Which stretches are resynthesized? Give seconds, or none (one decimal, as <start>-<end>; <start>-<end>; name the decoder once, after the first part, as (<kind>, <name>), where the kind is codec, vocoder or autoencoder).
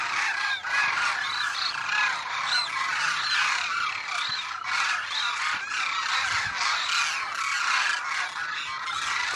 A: none